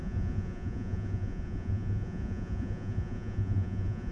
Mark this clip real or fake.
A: fake